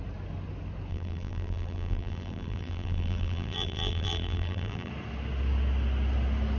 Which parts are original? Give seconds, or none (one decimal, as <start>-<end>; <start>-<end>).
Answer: 0.0-0.9; 4.9-6.6